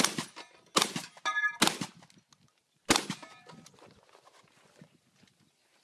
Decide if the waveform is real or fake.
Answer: real